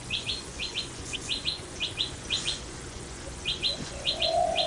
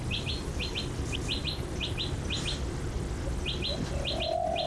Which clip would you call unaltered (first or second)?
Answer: second